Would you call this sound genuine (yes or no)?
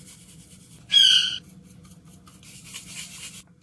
yes